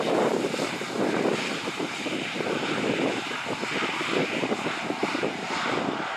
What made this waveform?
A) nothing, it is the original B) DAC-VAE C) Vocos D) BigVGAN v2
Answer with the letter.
A